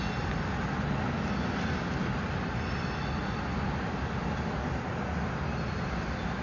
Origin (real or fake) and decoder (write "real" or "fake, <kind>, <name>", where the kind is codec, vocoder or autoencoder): real